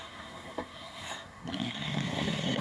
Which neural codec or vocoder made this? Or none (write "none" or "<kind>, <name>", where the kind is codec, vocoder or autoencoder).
codec, SNAC